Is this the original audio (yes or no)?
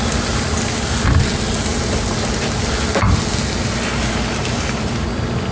yes